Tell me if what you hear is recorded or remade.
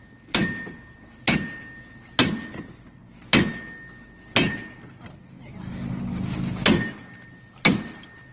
recorded